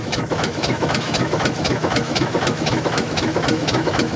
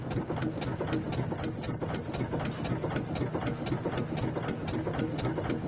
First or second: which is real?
second